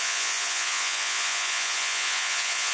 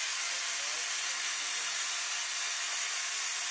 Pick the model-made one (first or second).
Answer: first